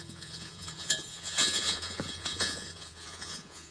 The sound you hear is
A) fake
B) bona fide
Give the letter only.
A